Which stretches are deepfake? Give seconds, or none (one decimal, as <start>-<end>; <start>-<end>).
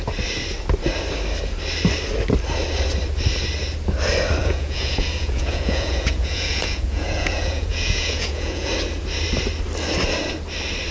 4.4-8.7